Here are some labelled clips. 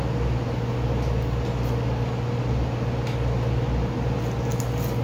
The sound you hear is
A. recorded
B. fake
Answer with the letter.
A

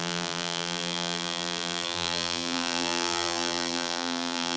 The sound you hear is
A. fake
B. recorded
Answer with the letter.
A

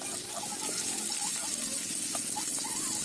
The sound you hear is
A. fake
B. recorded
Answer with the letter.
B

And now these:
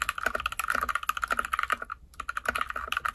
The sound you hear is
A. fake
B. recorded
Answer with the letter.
B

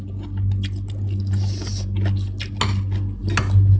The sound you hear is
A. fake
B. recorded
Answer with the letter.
B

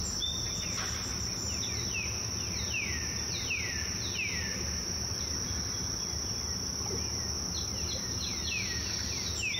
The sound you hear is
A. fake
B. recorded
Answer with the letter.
B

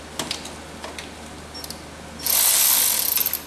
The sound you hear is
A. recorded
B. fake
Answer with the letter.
A